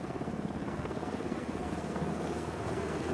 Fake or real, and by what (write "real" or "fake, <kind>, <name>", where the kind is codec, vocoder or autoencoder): fake, codec, SNAC